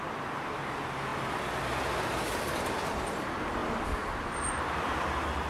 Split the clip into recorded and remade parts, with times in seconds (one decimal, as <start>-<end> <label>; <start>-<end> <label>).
0.0-2.1 recorded; 2.1-2.9 remade; 2.9-5.5 recorded